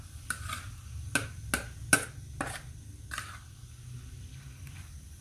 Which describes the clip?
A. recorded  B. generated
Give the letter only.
A